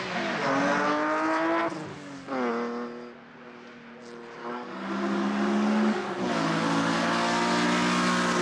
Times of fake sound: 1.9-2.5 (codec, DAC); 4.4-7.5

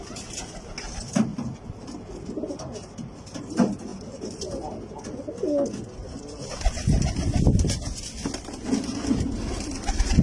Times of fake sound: none